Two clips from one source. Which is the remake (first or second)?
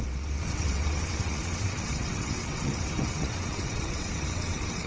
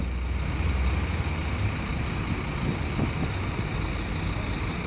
first